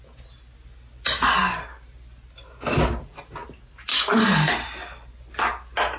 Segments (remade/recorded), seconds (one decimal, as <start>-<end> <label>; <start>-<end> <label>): 0.0-3.9 recorded; 3.9-4.5 remade; 4.5-6.0 recorded